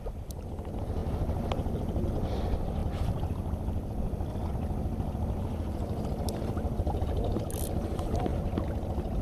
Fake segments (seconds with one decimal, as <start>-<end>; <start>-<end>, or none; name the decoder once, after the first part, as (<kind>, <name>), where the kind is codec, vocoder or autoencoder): 0.0-1.0 (vocoder, BigVGAN v2); 2.1-8.3